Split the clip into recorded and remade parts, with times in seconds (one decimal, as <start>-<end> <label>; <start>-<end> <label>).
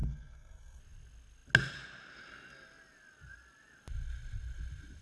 0.0-0.8 remade; 0.8-5.0 recorded